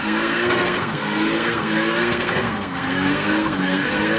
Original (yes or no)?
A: no